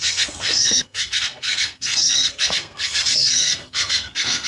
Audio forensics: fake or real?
fake